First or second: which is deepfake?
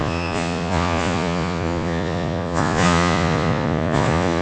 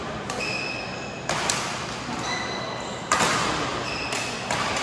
first